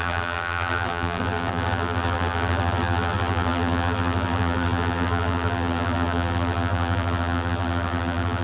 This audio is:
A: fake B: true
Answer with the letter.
A